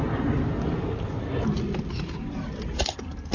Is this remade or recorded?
recorded